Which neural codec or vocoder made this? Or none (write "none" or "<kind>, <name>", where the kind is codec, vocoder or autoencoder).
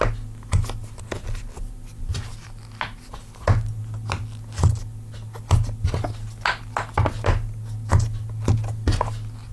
none